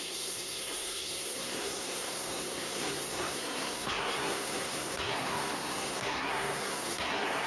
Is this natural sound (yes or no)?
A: no